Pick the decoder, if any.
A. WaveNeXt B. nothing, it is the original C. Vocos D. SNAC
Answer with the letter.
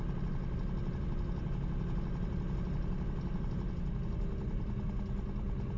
B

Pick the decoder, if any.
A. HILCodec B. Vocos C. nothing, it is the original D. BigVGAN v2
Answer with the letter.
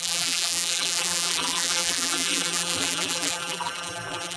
D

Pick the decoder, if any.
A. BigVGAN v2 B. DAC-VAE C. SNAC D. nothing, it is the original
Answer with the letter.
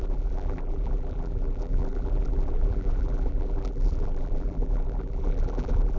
A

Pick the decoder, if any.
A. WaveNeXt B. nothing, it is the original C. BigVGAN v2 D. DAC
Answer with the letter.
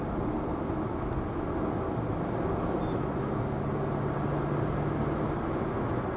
B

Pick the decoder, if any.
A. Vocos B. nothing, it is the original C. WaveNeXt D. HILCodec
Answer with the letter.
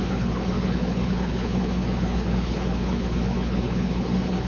D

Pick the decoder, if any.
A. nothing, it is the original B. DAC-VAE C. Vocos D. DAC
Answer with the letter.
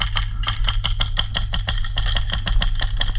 A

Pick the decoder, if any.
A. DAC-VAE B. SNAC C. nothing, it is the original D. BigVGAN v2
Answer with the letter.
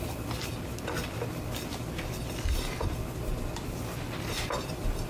C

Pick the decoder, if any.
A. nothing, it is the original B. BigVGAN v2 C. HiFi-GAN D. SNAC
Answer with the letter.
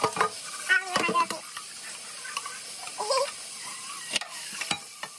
A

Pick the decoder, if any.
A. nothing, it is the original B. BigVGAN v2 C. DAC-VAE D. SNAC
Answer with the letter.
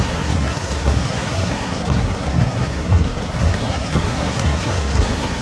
D